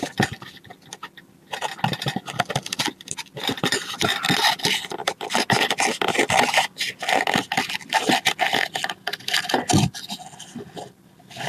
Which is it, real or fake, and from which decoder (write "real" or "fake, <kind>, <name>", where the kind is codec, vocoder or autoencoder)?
real